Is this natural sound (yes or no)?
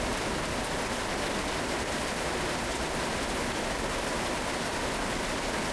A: yes